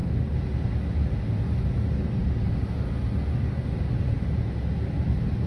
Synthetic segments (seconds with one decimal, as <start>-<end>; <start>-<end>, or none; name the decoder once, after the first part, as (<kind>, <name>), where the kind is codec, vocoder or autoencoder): none